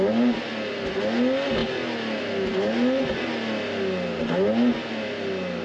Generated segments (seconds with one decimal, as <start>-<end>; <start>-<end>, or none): none